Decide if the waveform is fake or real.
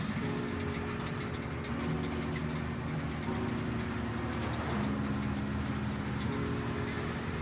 real